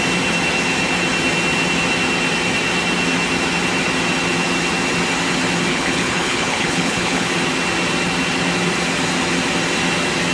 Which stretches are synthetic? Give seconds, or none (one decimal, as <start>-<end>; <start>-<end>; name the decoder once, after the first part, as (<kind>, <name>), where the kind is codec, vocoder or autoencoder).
5.7-7.3 (codec, HILCodec)